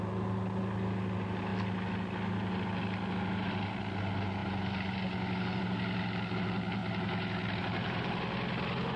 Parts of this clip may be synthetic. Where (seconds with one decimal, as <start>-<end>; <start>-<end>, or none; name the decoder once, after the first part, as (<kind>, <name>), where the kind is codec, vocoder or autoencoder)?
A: none

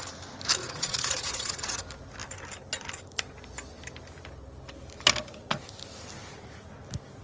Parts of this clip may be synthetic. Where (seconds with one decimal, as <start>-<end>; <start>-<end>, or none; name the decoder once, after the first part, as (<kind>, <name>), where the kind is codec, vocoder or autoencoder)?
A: 0.6-1.8 (vocoder, Vocos)

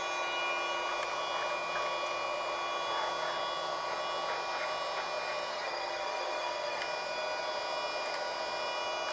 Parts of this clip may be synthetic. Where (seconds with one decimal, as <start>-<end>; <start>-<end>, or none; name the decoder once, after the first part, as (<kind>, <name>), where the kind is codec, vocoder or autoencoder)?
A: 5.5-6.8 (codec, SNAC)

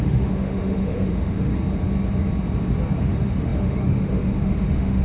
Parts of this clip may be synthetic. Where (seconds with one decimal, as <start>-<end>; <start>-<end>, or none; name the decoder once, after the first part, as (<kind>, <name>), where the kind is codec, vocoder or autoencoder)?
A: 0.0-1.5 (autoencoder, DAC-VAE); 3.0-5.0

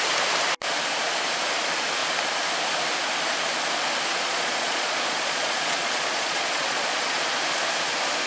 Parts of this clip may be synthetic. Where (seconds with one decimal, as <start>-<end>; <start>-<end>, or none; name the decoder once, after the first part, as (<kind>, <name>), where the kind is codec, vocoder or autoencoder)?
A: 4.1-7.2 (vocoder, Vocos)